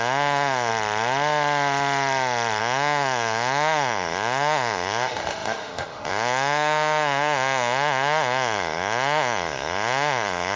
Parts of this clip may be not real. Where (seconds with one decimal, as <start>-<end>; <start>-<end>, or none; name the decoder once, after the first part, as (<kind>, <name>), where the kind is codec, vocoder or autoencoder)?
0.0-0.7 (autoencoder, DAC-VAE); 2.6-10.6